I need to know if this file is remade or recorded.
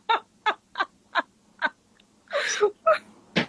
recorded